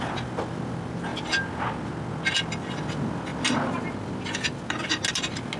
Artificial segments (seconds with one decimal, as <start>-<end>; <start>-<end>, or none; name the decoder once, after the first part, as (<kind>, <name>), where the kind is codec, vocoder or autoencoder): none